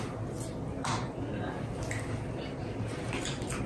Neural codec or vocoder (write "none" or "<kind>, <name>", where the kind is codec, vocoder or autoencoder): none